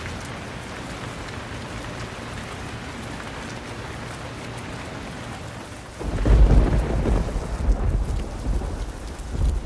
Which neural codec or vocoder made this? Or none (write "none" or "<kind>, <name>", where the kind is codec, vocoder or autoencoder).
none